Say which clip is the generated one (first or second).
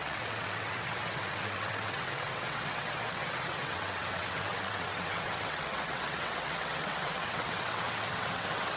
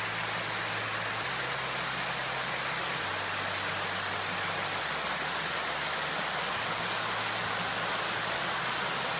first